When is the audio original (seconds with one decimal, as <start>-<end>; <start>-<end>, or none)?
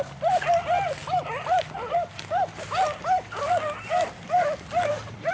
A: 0.0-5.3